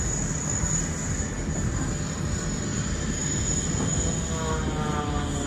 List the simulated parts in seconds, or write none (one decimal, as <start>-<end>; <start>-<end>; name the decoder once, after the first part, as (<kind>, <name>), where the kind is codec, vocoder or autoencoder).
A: none